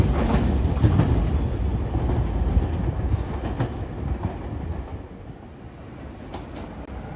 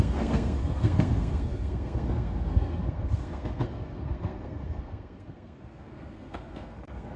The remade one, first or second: second